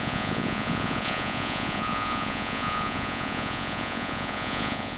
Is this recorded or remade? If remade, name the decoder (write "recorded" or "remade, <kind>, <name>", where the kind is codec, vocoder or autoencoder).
remade, vocoder, Vocos